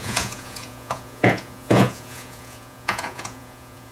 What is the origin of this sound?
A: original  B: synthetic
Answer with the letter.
B